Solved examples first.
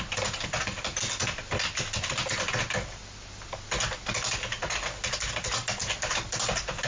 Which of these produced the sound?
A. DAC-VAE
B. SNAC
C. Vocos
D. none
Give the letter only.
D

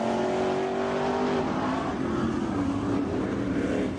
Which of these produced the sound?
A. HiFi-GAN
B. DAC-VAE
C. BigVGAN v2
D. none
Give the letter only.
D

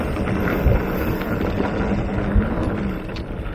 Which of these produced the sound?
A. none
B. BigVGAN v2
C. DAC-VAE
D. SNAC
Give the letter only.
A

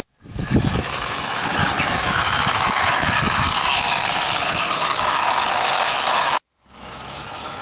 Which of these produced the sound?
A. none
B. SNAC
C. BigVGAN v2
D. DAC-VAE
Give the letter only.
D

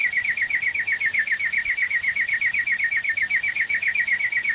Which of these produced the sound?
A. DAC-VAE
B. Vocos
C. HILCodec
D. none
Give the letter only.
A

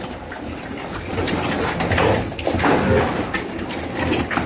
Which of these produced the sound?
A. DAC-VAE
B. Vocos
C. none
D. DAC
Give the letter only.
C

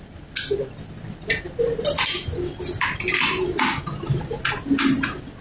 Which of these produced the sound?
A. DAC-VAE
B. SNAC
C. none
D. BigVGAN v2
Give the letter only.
C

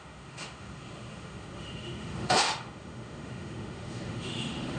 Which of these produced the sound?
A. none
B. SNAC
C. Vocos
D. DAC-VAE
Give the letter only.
D